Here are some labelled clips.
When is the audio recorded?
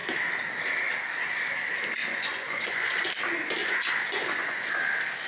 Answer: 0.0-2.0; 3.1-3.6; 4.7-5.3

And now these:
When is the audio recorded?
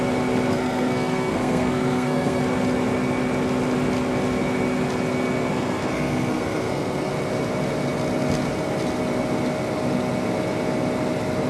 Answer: 0.0-0.5; 2.4-5.5; 7.1-11.5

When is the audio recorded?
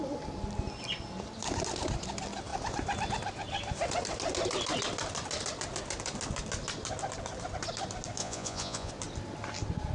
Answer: 0.0-8.2; 8.9-9.9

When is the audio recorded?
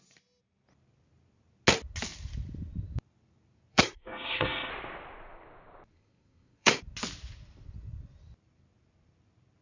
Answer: 0.0-3.7; 4.7-5.9; 6.8-9.6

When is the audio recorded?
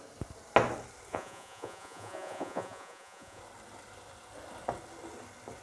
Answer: 0.0-1.1; 3.4-5.6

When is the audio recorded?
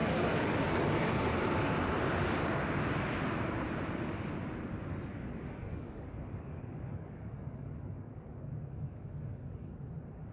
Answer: 1.1-4.9; 9.7-10.3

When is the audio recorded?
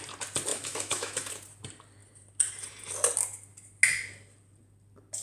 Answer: 0.0-0.5; 1.3-5.2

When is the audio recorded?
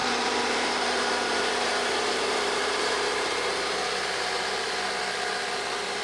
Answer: 3.6-6.0